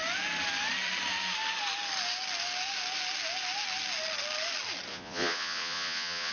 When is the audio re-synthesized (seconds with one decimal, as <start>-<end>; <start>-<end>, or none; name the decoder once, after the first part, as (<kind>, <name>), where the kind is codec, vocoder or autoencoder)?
4.9-6.3 (vocoder, Vocos)

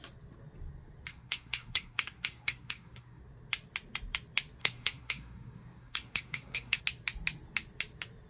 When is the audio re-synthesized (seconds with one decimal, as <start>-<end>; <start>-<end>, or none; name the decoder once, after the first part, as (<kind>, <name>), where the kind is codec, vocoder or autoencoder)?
1.1-3.2 (codec, SNAC); 4.6-6.8

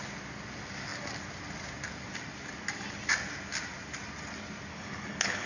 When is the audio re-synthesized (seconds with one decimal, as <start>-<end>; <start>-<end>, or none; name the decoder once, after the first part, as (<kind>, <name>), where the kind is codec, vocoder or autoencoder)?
4.7-5.5 (codec, HILCodec)

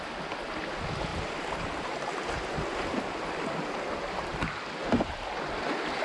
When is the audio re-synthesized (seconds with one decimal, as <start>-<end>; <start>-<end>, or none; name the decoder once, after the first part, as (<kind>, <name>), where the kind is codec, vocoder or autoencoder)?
1.1-2.3 (vocoder, BigVGAN v2); 4.8-5.5

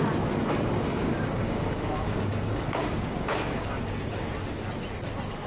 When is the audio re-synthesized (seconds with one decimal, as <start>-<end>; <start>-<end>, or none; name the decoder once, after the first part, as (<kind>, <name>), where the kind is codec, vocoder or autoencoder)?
0.9-4.2 (codec, DAC)

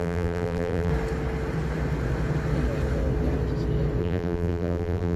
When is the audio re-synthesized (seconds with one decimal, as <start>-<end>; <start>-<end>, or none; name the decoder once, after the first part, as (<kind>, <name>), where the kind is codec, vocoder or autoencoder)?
0.0-0.9 (vocoder, BigVGAN v2); 4.0-5.2

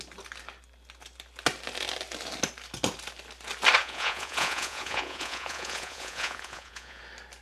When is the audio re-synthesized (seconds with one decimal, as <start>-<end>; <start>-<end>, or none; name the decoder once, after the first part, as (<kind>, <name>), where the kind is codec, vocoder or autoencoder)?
3.8-7.0 (vocoder, Vocos)

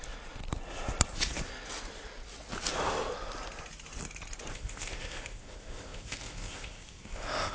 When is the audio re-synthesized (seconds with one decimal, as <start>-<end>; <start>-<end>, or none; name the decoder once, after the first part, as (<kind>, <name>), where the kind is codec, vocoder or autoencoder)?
4.5-7.5 (codec, ZipCodec)